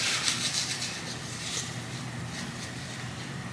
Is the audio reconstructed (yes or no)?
no